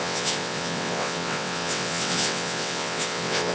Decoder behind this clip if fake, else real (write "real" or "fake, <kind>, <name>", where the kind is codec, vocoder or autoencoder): fake, vocoder, WaveNeXt